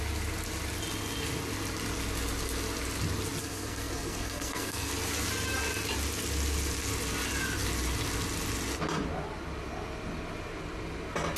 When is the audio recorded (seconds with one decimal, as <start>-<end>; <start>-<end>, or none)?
0.0-3.4; 4.9-11.4